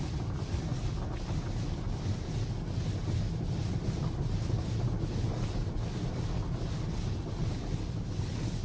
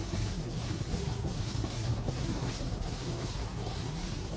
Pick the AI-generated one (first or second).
second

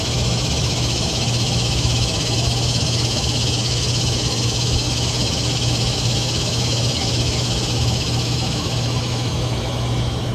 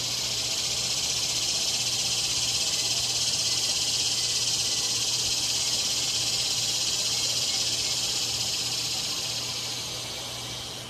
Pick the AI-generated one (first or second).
first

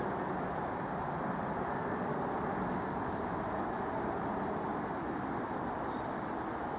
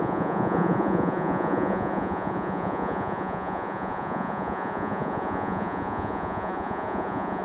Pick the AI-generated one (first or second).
second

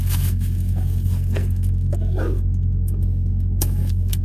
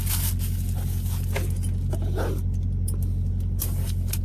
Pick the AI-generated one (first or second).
first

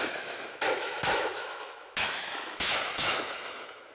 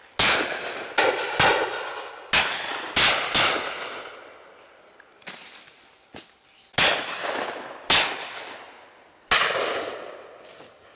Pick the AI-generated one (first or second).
first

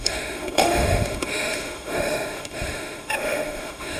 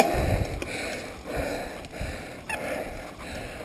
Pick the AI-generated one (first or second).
first